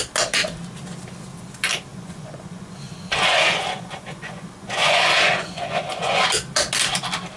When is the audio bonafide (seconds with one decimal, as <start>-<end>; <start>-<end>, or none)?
0.0-1.9; 6.3-7.4